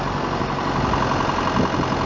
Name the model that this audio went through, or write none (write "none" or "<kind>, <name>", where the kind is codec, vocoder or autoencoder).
none